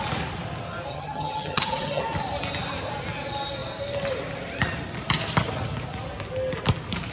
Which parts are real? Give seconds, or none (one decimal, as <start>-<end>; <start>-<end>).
0.0-0.9; 2.0-7.1